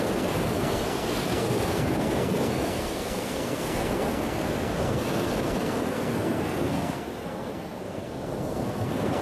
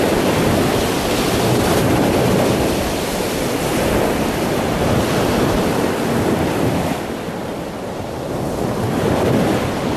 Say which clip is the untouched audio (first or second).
second